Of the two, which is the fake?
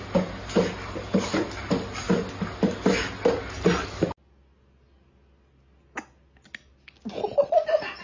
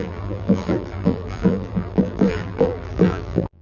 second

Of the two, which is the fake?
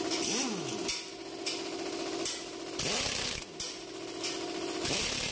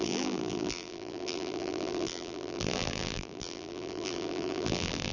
second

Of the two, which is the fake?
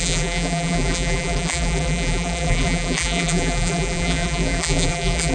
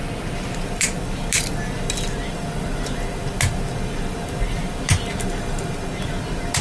first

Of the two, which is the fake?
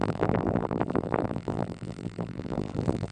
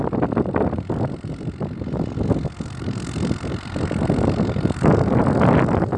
first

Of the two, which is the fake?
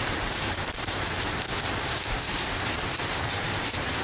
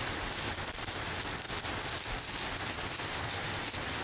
first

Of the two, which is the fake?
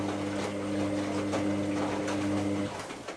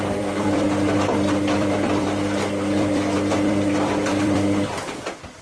second